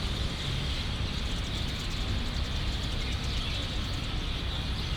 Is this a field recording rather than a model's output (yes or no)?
yes